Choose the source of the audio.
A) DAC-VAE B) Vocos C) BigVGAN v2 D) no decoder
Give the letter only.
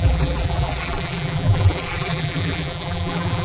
C